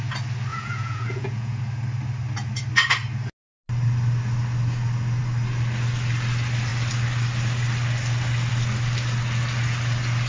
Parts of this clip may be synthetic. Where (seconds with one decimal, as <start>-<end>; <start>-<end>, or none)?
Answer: 0.5-1.6